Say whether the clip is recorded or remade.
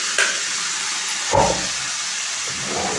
recorded